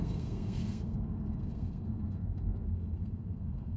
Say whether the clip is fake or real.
fake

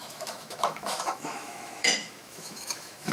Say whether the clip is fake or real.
fake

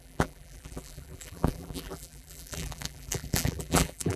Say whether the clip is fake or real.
fake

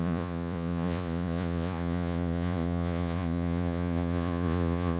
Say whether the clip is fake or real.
fake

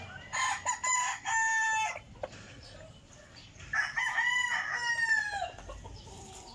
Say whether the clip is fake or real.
real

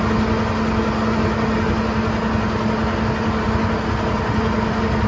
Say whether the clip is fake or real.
real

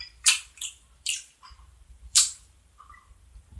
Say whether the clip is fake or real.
fake